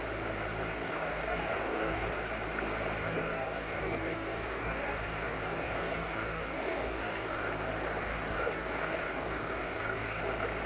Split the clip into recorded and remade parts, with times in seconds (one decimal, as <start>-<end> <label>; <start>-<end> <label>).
0.0-0.7 recorded; 0.7-2.1 remade; 2.1-3.0 recorded; 3.0-7.5 remade; 7.5-8.0 recorded; 8.0-10.2 remade; 10.2-10.7 recorded